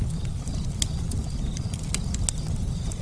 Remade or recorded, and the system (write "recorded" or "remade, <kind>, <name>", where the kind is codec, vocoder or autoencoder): recorded